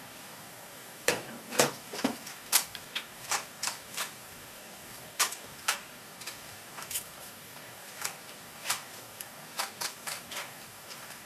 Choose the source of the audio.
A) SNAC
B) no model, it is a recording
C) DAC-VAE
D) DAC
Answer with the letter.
D